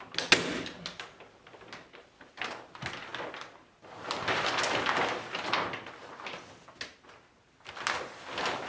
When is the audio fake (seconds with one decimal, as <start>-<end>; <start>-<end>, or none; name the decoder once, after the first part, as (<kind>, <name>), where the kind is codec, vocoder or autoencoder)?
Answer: none